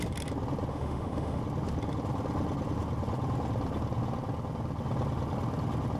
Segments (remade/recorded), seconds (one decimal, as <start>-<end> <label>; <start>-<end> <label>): 0.0-0.7 recorded; 0.7-1.4 remade; 1.4-6.0 recorded